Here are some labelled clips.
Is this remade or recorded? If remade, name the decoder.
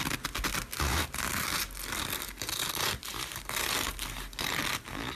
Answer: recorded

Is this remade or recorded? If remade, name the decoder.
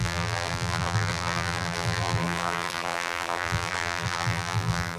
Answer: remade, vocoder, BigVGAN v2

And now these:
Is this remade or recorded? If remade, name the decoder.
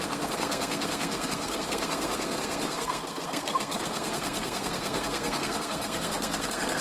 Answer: remade, codec, SNAC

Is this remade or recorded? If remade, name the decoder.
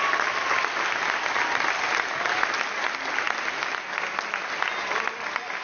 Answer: recorded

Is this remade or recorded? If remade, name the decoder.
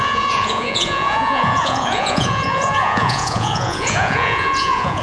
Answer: remade, vocoder, Vocos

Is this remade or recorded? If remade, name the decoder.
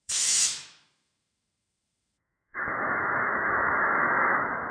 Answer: remade, autoencoder, DAC-VAE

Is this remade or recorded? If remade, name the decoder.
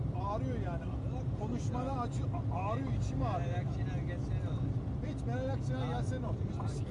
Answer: recorded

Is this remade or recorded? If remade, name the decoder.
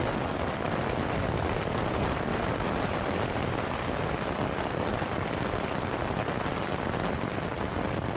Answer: recorded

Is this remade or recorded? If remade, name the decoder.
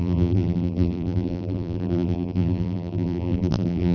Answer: remade, vocoder, BigVGAN v2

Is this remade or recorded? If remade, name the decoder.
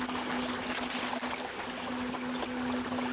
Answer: recorded